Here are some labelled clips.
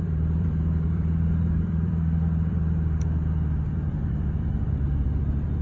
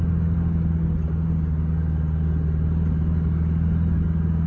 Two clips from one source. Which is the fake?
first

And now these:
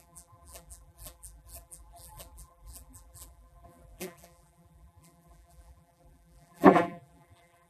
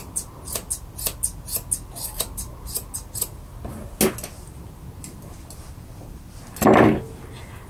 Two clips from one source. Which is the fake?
first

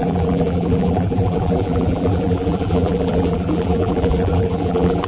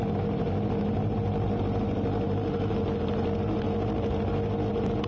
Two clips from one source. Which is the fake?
first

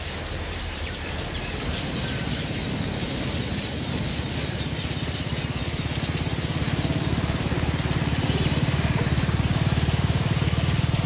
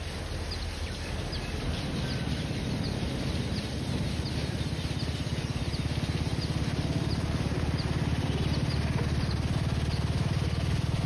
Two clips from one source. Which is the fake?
first